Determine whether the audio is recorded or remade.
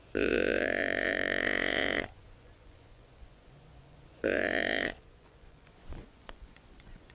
remade